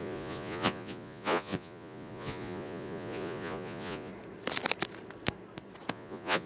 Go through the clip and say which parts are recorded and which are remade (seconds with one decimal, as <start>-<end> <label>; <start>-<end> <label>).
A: 0.0-4.1 remade; 4.1-5.9 recorded; 5.9-6.5 remade